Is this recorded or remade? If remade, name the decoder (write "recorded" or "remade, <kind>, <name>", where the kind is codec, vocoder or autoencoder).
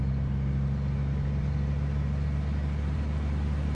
recorded